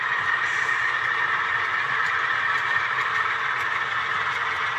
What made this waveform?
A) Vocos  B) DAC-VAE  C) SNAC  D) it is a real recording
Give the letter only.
D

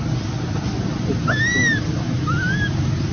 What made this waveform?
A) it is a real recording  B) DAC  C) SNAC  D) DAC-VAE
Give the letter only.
A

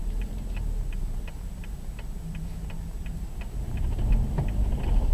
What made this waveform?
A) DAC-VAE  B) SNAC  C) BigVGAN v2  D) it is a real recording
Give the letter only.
D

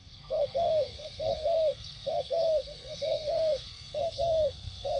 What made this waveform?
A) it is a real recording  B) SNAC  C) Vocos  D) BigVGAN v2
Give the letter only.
B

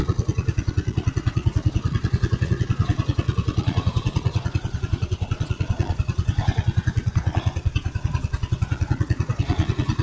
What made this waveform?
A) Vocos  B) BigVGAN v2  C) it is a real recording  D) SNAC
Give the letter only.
A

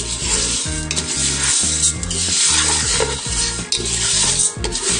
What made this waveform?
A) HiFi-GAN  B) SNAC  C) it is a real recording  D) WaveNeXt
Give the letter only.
C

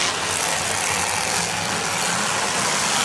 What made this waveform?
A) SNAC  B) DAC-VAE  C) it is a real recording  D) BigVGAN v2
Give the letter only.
C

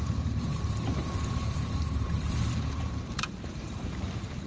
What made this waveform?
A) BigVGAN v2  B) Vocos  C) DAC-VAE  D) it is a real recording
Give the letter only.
A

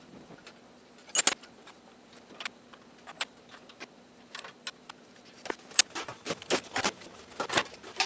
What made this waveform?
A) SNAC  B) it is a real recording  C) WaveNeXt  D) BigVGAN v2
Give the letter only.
B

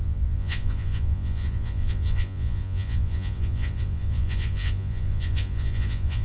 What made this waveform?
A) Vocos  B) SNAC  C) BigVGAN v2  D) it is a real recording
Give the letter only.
A